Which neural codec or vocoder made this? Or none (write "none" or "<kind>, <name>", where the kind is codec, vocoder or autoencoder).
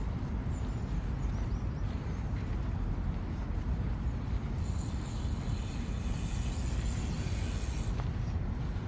none